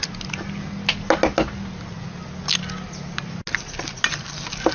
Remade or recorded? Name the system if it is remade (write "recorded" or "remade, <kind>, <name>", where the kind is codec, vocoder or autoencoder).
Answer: recorded